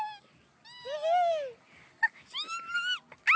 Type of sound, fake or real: real